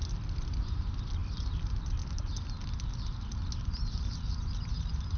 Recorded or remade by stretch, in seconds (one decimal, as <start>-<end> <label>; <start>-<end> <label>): 0.0-5.2 recorded